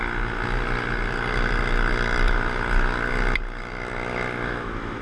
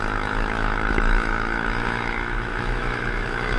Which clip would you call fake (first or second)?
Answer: second